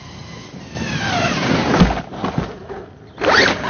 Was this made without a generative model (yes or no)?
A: yes